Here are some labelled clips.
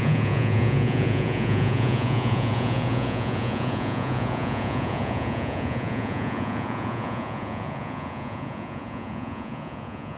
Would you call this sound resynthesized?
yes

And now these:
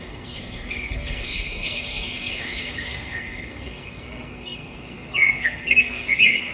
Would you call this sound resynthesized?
yes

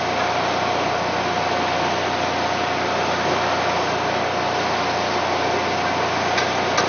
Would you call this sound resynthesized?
no